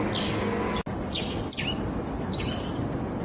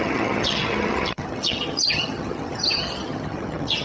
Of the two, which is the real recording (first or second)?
first